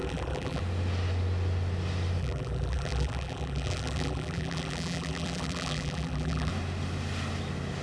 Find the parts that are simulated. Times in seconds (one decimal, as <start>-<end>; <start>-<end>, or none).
0.0-0.6; 2.2-6.5